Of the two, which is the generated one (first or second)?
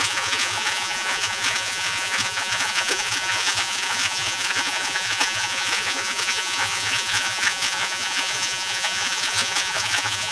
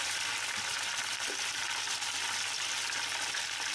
first